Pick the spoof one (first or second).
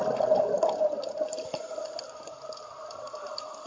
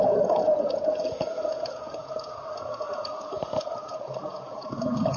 second